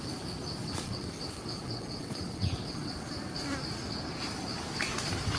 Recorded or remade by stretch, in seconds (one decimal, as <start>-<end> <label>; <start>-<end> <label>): 0.0-0.6 recorded; 0.6-3.1 remade; 3.1-5.4 recorded